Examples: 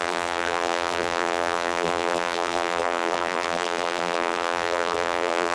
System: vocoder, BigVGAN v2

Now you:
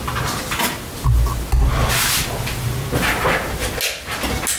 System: none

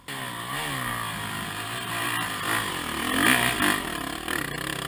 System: none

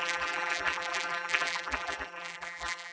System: vocoder, BigVGAN v2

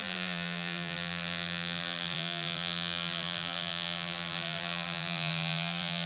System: vocoder, BigVGAN v2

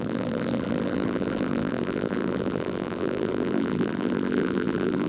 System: vocoder, BigVGAN v2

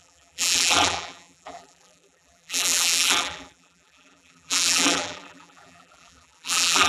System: vocoder, BigVGAN v2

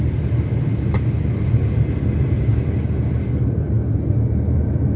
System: none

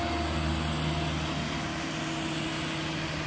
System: none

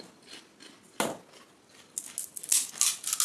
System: none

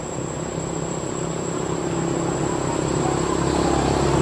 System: vocoder, BigVGAN v2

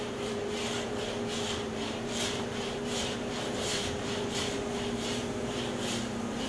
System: vocoder, BigVGAN v2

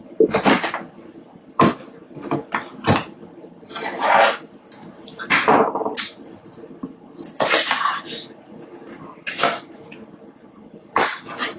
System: vocoder, BigVGAN v2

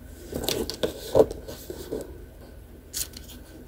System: none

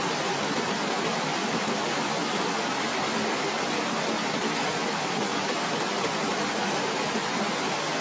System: none